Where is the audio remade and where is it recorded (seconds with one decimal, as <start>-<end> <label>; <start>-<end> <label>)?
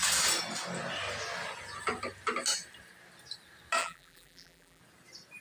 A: 0.0-3.8 recorded; 3.8-4.8 remade; 4.8-5.4 recorded